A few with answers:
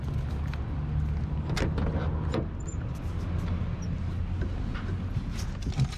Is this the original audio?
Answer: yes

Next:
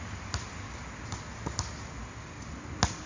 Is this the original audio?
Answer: yes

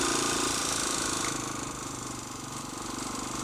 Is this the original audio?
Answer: yes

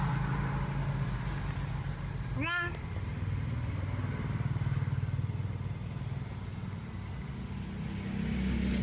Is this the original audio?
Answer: yes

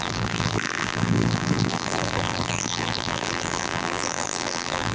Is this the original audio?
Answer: no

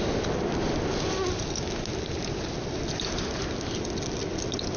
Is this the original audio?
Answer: yes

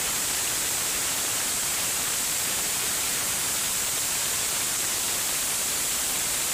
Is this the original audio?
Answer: no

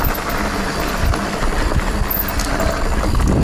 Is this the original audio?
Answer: yes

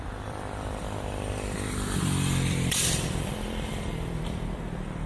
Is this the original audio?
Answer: no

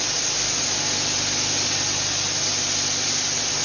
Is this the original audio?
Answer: yes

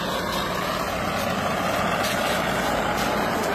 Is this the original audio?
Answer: yes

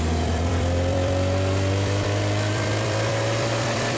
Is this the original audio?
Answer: no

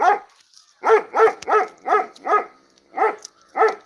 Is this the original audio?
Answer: yes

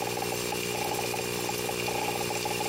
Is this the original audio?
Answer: yes